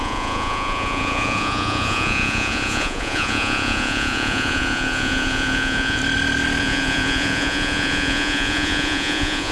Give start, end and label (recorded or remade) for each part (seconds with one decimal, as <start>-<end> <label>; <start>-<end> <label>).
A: 0.0-6.0 remade; 6.0-6.6 recorded; 6.6-9.5 remade